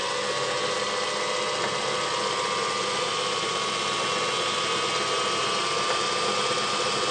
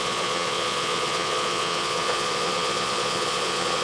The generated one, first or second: second